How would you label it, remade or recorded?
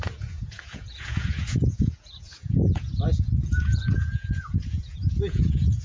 remade